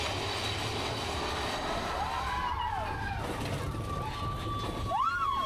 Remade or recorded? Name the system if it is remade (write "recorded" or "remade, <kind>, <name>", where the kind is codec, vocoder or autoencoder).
recorded